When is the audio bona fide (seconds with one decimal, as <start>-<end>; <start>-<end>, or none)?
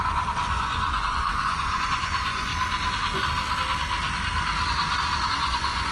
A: 2.5-5.2